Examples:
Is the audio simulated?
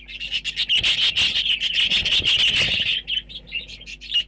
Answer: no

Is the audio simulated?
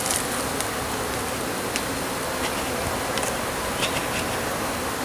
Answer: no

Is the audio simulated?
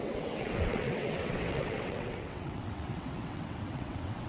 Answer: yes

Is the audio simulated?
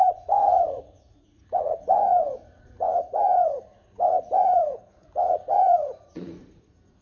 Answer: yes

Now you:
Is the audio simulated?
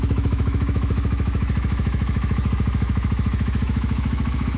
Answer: yes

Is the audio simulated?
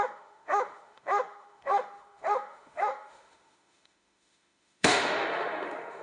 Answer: yes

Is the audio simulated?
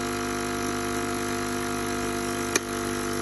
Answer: no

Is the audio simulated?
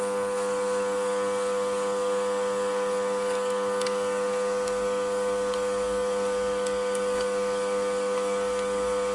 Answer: yes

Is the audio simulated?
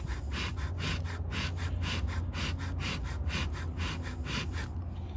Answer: no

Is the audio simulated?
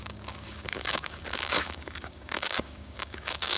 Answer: yes